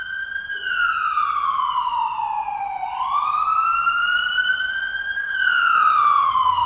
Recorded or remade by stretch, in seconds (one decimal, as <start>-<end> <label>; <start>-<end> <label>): 0.0-5.2 recorded; 5.2-6.3 remade; 6.3-6.7 recorded